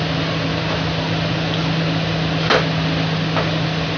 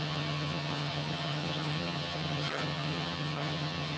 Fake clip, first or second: second